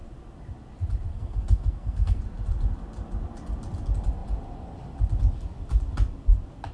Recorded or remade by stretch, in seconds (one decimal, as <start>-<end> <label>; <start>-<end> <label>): 0.0-1.1 recorded; 1.1-2.2 remade; 2.2-6.7 recorded